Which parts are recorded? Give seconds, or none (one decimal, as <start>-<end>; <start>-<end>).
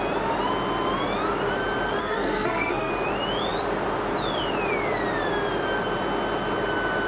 0.0-2.0; 2.9-7.1